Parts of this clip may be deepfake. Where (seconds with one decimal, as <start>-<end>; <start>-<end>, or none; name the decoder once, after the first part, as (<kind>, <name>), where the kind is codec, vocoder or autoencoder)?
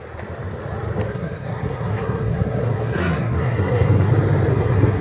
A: 1.1-4.1 (codec, SNAC); 4.5-5.0